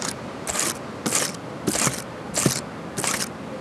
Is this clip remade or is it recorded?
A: recorded